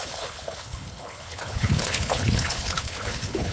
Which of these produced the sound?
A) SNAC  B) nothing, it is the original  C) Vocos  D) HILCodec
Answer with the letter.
D